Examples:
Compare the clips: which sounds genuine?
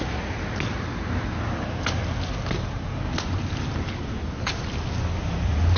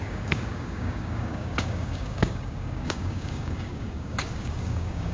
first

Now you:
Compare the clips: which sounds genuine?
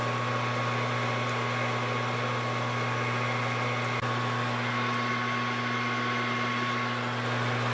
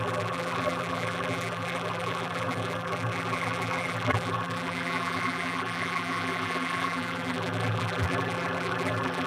first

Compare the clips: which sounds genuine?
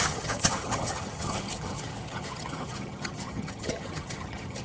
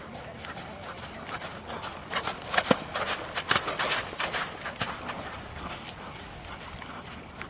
second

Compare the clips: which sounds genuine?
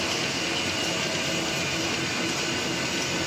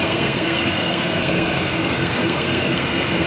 first